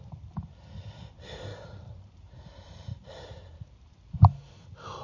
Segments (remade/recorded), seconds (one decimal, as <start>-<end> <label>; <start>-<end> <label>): 0.0-1.5 recorded; 1.5-3.9 remade; 3.9-5.0 recorded